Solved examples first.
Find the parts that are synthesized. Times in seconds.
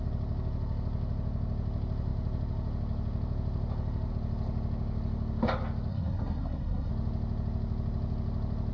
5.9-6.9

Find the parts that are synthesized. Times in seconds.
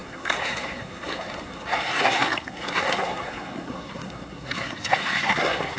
0.0-5.8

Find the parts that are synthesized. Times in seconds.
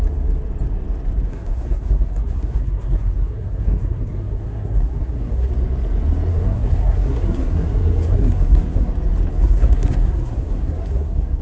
1.3-5.5; 6.3-8.9; 9.3-11.4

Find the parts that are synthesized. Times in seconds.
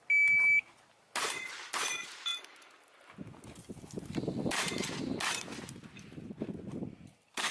none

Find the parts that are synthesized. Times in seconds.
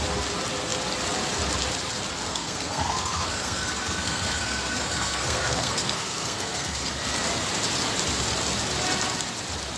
2.3-6.9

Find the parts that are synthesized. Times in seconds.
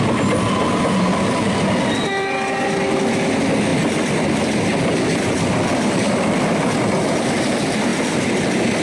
none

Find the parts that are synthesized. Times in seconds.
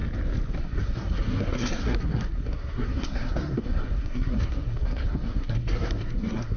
0.6-6.6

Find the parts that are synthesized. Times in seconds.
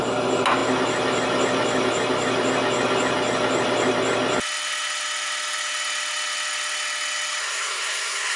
7.4-8.4